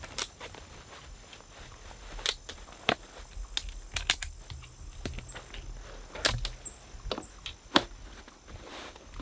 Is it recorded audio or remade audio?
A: recorded